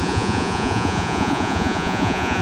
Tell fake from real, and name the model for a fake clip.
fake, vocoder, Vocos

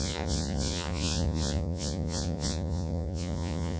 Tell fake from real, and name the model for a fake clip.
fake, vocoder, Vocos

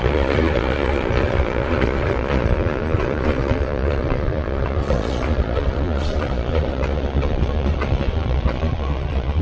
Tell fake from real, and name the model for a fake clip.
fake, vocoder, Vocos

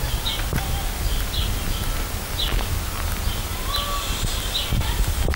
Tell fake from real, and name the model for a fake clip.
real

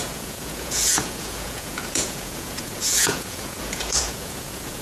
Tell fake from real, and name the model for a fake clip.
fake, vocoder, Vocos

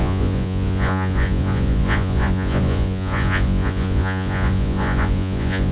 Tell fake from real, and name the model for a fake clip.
fake, vocoder, Vocos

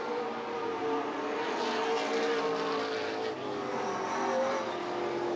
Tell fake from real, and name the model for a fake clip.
real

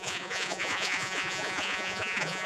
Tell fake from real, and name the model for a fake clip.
fake, vocoder, Vocos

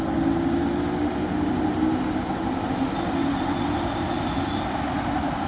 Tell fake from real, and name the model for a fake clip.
real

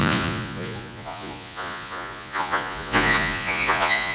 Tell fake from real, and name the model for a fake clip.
fake, vocoder, Vocos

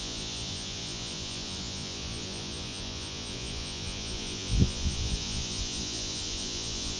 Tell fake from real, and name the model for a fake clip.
fake, vocoder, Vocos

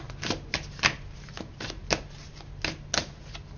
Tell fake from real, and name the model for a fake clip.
real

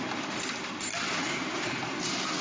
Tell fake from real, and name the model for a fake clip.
real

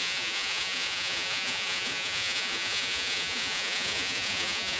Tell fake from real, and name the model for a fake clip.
fake, vocoder, Vocos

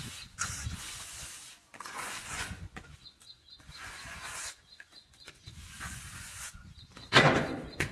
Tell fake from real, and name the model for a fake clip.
fake, vocoder, Vocos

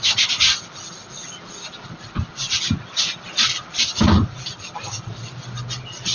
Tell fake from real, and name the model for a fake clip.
real